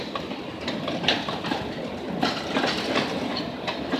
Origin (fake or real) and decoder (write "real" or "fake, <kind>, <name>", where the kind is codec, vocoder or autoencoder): real